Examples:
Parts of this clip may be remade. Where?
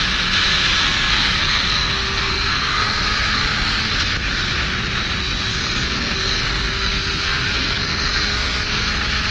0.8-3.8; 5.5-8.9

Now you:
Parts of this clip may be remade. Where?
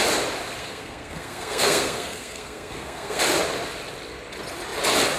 0.6-3.2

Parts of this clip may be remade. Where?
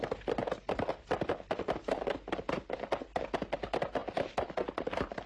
none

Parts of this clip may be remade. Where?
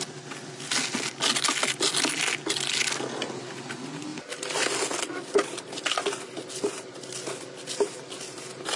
none